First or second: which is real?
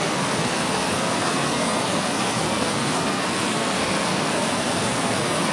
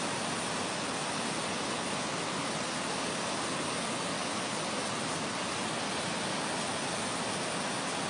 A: second